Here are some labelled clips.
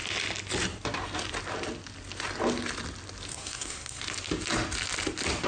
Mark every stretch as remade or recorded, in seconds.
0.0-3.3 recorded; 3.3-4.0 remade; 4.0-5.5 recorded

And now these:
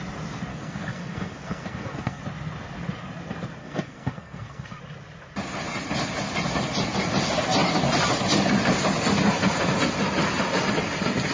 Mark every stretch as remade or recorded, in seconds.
0.0-0.5 recorded; 0.5-2.2 remade; 2.2-3.6 recorded; 3.6-4.8 remade; 4.8-11.3 recorded

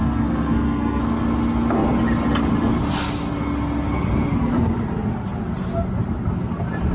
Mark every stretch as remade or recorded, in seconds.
0.0-1.0 remade; 1.0-6.9 recorded

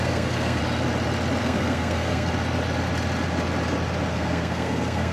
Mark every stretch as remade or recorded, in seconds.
0.0-0.6 remade; 0.6-1.4 recorded; 1.4-2.3 remade; 2.3-4.1 recorded; 4.1-5.1 remade